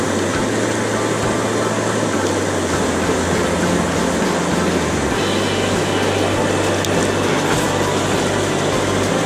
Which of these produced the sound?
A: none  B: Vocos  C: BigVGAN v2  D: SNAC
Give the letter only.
A